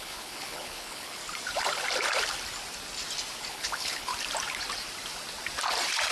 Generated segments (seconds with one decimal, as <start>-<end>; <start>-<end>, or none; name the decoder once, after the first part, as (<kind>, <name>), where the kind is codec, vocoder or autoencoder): 0.0-1.2 (codec, HILCodec); 3.5-4.1